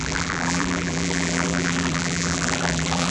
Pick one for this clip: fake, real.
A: fake